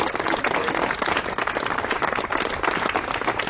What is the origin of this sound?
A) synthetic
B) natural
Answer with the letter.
B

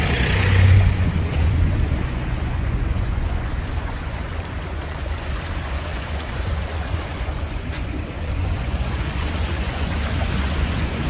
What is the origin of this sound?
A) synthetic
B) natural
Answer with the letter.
A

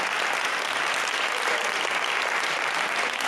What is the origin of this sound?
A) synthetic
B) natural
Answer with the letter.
B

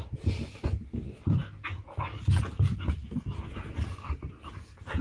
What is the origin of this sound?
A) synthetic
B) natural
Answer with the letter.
B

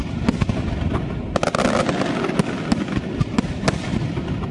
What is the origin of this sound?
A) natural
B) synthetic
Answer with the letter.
A